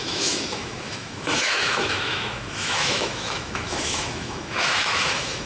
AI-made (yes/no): yes